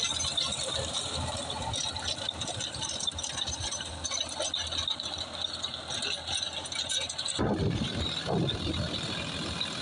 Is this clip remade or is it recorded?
recorded